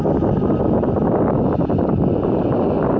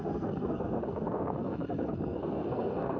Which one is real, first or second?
first